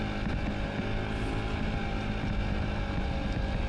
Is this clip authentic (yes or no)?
yes